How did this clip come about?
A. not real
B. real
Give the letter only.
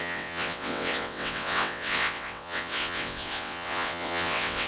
A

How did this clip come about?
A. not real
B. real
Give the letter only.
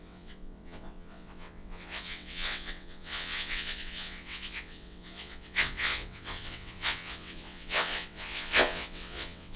A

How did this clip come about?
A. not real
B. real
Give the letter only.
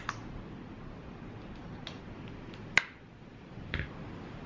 B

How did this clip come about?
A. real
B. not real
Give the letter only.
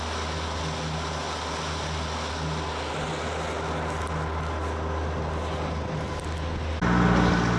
A